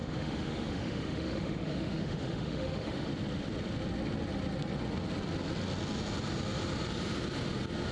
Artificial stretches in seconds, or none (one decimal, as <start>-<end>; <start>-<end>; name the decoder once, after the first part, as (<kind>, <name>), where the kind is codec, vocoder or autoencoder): 0.0-3.1 (autoencoder, DAC-VAE)